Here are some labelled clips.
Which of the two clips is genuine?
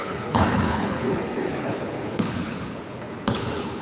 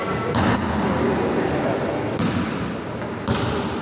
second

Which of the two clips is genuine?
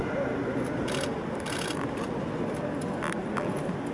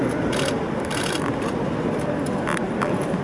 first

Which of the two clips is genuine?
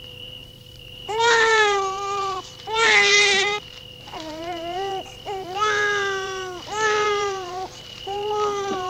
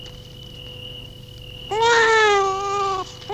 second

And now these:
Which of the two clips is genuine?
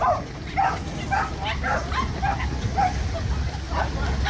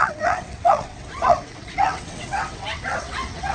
first